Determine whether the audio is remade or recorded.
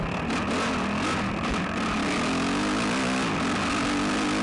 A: recorded